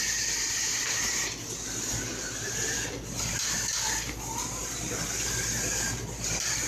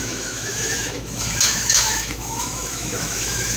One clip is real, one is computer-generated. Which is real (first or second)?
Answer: first